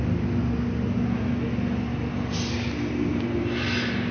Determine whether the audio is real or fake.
real